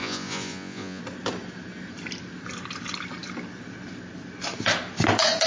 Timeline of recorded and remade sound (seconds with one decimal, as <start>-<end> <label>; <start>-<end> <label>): 0.0-1.0 remade; 1.0-5.5 recorded